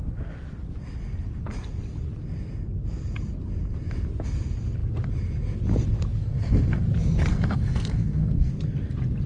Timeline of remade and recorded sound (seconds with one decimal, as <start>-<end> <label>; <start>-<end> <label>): 0.0-6.2 recorded; 6.2-6.8 remade; 6.8-7.3 recorded; 7.3-8.5 remade; 8.5-9.3 recorded